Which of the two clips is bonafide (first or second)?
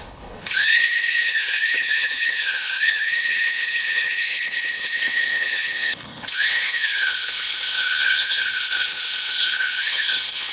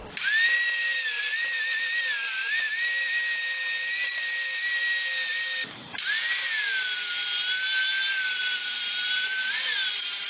second